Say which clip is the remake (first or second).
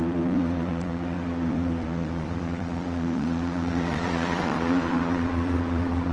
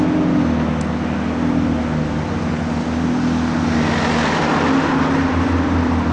first